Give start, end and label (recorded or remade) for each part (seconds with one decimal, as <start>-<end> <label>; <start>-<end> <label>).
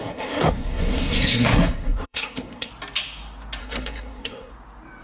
0.0-2.7 remade; 2.7-3.6 recorded; 3.6-4.5 remade; 4.5-5.0 recorded